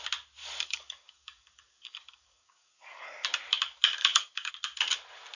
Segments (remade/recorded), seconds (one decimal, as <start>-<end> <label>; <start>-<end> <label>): 0.0-0.4 recorded; 0.4-3.1 remade; 3.1-4.0 recorded; 4.0-4.5 remade; 4.5-5.3 recorded